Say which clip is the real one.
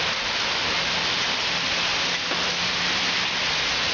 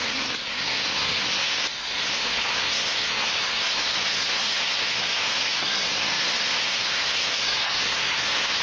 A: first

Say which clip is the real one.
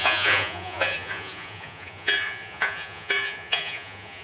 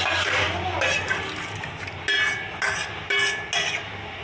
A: second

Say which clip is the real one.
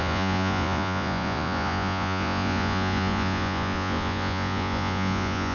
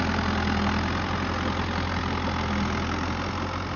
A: second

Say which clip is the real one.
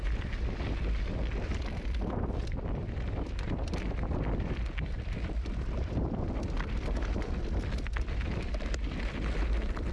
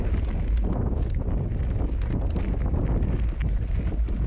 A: second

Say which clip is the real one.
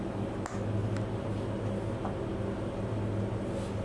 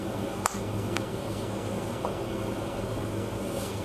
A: first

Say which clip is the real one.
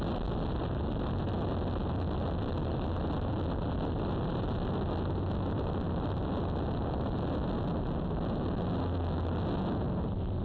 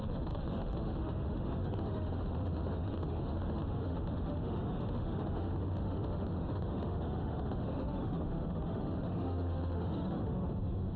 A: first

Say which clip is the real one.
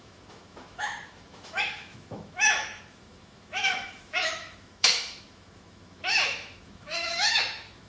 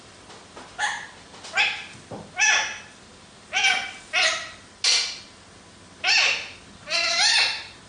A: second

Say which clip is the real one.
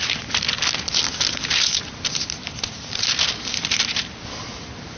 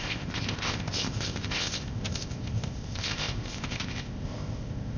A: first